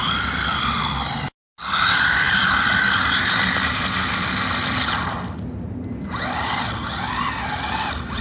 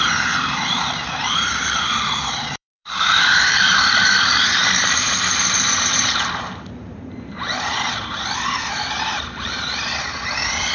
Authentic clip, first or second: first